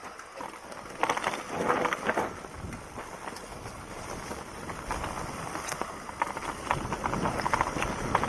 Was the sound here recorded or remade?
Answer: recorded